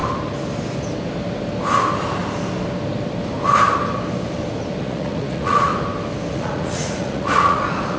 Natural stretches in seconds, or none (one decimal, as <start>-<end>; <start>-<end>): 0.0-4.8; 5.7-6.3